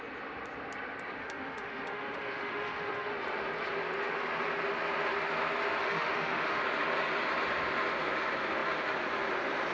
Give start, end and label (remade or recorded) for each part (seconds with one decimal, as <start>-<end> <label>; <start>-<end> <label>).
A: 0.0-1.2 recorded; 1.2-3.1 remade; 3.1-5.8 recorded; 5.8-6.6 remade; 6.6-9.7 recorded